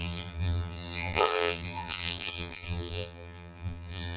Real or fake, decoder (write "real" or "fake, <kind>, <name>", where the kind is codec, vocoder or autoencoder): fake, vocoder, BigVGAN v2